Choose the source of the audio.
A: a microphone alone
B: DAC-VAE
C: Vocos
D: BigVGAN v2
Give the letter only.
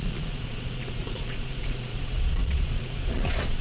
C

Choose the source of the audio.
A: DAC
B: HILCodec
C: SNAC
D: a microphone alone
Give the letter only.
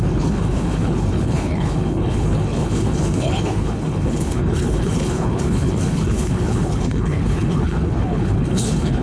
B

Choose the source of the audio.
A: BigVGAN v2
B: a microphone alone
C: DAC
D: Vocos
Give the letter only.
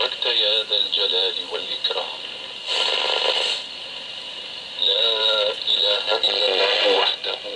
A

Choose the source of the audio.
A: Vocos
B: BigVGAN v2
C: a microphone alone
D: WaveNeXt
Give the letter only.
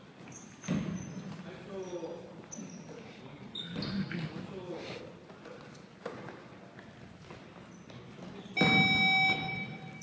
C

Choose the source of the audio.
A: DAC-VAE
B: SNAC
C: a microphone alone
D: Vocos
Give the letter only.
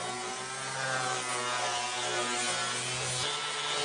C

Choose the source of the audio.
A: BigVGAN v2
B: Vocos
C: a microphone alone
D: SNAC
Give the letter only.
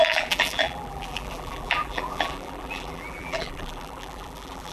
A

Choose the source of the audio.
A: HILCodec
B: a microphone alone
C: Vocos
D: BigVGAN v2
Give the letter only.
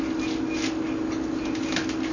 B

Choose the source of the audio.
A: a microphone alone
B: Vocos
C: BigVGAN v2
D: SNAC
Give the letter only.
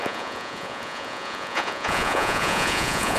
B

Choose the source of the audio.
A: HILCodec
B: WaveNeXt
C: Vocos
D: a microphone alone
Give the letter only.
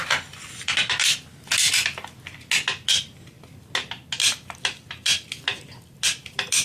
D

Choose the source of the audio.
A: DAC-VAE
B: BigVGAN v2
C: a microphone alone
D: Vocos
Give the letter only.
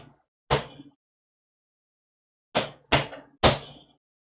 C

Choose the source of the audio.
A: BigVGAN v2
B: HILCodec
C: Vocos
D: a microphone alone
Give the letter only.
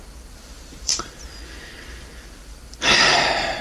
A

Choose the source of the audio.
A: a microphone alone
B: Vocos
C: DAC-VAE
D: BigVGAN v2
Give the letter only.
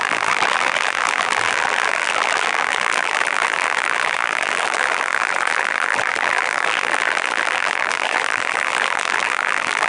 D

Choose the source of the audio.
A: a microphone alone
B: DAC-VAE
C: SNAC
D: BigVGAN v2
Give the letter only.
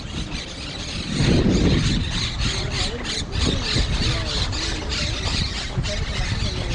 A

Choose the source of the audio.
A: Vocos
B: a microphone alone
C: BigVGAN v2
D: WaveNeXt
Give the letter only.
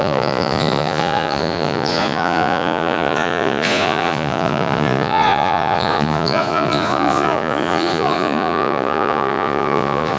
A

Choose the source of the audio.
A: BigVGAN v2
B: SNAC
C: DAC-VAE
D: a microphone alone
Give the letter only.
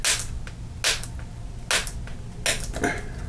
D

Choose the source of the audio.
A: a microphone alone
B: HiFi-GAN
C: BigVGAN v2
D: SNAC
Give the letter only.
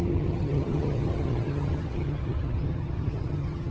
B